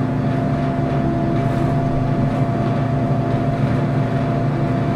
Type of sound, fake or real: real